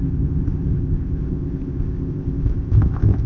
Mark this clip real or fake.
fake